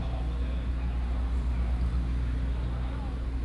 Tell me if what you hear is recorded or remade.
recorded